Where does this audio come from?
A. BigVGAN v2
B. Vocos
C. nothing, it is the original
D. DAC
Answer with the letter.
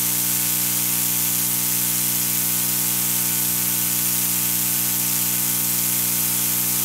C